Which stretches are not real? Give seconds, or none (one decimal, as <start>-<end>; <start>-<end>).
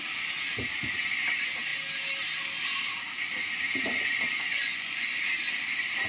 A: 4.5-5.2